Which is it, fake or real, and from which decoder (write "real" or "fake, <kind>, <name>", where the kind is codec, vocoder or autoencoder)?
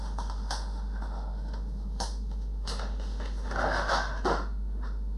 fake, autoencoder, DAC-VAE